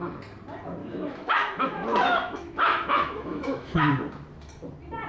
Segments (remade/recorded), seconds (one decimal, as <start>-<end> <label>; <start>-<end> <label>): 0.0-0.8 recorded; 0.8-3.9 remade; 3.9-5.1 recorded